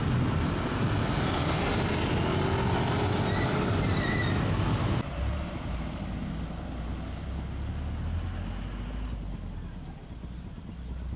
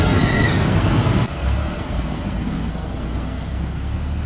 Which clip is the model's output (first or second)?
second